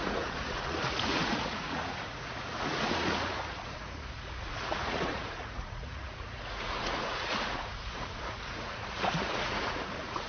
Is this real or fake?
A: fake